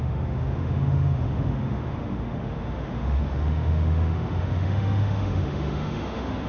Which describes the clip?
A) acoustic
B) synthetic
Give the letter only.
B